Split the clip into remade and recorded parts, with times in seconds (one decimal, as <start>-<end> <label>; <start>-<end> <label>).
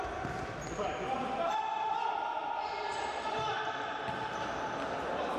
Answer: 0.0-2.4 recorded; 2.4-4.0 remade; 4.0-5.4 recorded